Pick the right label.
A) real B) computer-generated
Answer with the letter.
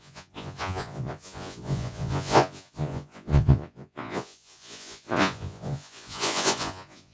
B